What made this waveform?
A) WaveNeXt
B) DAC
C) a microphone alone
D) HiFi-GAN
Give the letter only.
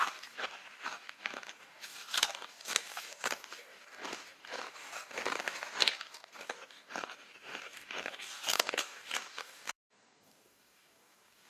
B